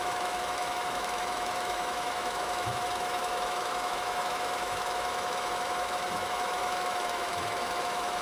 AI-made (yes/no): yes